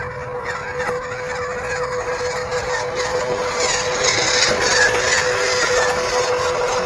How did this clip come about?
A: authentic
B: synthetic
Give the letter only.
A